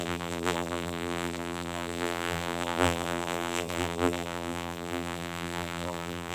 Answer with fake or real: fake